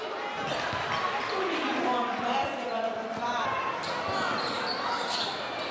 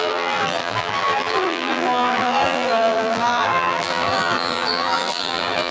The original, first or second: first